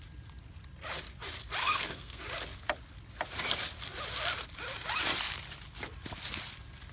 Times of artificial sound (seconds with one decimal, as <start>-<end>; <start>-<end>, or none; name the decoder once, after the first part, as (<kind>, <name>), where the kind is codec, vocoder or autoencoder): 1.6-2.2 (codec, SNAC)

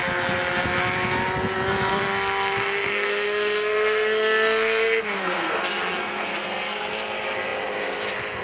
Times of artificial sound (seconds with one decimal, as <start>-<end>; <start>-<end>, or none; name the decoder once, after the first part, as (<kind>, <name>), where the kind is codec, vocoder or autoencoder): 1.9-6.9 (codec, SNAC)

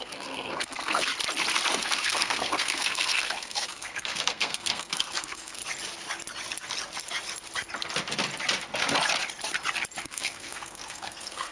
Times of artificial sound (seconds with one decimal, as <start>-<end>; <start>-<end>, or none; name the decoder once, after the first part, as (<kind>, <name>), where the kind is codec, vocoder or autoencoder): 0.0-1.1 (codec, SNAC); 1.8-5.6; 10.0-11.5

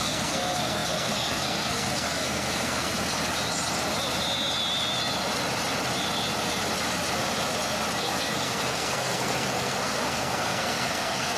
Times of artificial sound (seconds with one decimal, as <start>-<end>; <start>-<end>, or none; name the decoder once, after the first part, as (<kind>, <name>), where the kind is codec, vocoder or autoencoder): 0.0-2.9 (codec, SNAC); 8.0-11.4

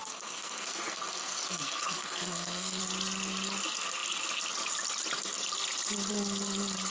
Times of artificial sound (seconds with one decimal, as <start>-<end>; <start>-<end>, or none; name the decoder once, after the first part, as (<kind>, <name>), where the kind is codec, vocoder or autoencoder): 0.0-2.8 (codec, SNAC)

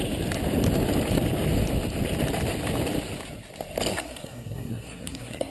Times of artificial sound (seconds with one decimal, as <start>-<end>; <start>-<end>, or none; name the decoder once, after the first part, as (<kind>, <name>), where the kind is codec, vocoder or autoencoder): 3.9-5.5 (codec, SNAC)

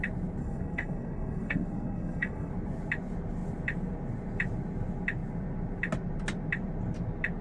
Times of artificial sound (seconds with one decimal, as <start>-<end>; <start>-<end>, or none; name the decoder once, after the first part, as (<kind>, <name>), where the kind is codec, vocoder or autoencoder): 0.4-2.5 (codec, SNAC)

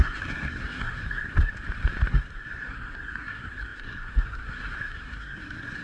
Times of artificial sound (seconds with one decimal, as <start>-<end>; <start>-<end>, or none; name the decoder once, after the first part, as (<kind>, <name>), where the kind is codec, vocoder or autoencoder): 0.0-1.5 (codec, SNAC); 2.1-5.8